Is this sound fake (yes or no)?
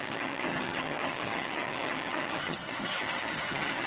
yes